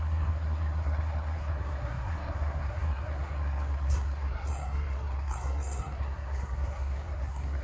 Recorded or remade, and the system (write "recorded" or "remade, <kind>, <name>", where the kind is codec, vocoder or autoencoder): remade, codec, SNAC